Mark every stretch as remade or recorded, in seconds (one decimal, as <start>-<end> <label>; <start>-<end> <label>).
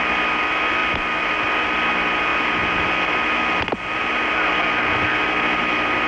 0.0-6.1 recorded